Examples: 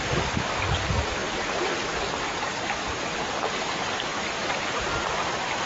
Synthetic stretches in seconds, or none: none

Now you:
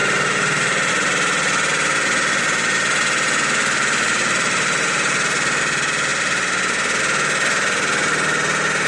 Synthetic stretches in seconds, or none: 0.0-0.9 (vocoder, BigVGAN v2); 3.6-5.6

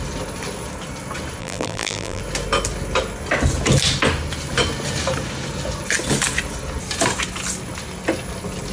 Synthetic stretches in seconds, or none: 1.4-2.2 (vocoder, BigVGAN v2)